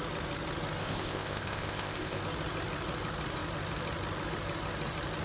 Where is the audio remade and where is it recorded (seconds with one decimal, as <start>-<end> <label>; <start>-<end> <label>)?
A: 0.0-0.8 recorded; 0.8-2.2 remade; 2.2-5.2 recorded